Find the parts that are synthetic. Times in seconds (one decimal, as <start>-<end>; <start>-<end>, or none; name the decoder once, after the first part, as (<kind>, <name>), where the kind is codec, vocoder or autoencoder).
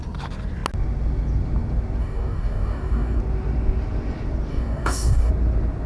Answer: 2.0-3.2 (codec, DAC); 4.5-5.3